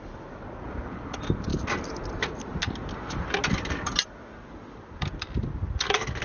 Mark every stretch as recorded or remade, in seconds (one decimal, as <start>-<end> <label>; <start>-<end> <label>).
0.0-6.2 recorded